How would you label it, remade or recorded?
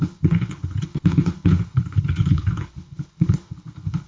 remade